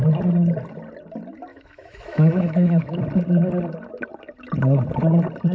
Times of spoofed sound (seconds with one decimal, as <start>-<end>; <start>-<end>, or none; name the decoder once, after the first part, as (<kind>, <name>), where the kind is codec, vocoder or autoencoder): 1.5-3.0 (autoencoder, DAC-VAE)

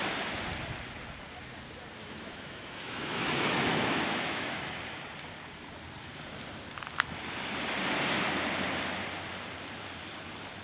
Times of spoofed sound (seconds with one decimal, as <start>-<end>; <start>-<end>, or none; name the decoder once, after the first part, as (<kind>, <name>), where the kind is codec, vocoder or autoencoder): 2.0-4.6 (autoencoder, DAC-VAE)

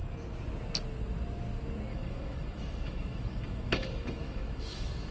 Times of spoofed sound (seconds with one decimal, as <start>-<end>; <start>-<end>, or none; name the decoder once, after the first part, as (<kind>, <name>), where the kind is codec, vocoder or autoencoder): 1.9-5.1 (autoencoder, DAC-VAE)

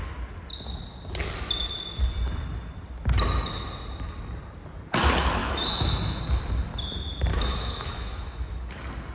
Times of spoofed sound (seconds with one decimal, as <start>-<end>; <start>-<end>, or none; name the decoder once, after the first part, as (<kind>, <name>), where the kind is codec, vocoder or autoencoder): 5.4-6.2 (autoencoder, DAC-VAE); 7.3-8.7

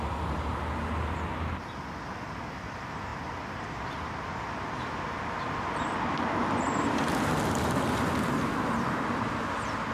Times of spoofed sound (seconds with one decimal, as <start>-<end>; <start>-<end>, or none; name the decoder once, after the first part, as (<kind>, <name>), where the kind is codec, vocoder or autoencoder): none